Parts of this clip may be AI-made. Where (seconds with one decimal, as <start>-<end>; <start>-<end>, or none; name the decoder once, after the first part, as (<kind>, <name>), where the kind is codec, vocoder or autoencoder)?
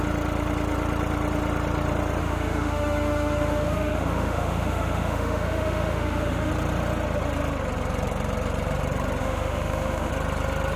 2.2-6.5 (autoencoder, DAC-VAE); 9.2-10.1